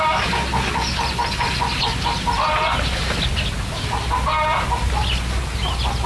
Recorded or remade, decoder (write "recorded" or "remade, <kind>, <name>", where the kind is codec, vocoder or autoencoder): recorded